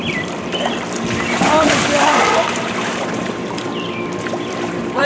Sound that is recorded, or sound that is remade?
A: remade